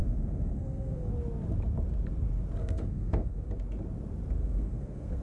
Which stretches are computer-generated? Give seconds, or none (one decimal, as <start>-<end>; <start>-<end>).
0.0-1.1; 2.6-3.5; 4.4-5.2

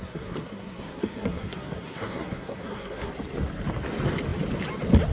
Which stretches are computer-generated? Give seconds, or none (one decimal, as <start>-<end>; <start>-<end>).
0.0-3.1

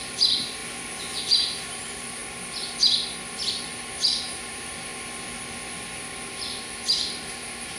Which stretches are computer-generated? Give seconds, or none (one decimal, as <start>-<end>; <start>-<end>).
0.0-0.6; 1.2-2.2; 3.5-4.9; 6.3-7.8